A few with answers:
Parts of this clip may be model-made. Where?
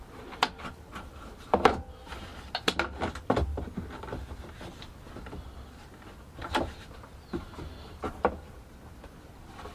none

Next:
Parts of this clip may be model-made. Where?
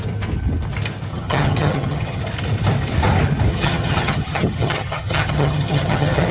1.1-2.2 (vocoder, HiFi-GAN); 3.5-6.3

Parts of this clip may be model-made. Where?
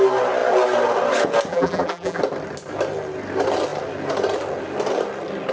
1.5-2.2 (vocoder, BigVGAN v2)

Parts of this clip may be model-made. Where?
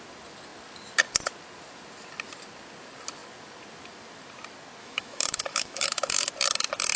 4.8-6.3 (autoencoder, DAC-VAE)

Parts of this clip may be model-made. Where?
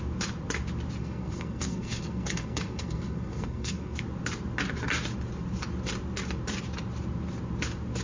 1.0-4.0 (codec, SNAC)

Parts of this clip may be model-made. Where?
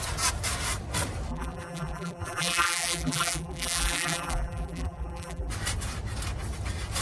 1.3-5.5 (vocoder, BigVGAN v2)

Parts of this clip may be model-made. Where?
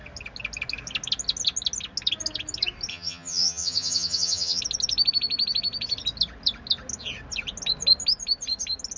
2.9-4.6 (vocoder, HiFi-GAN)